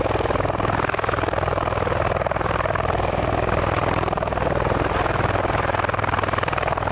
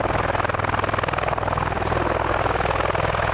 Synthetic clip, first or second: first